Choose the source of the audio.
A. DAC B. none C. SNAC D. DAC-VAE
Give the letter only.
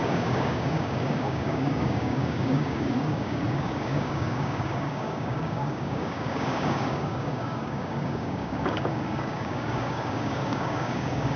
A